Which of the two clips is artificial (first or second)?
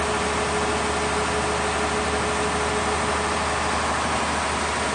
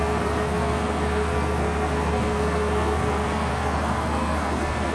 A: second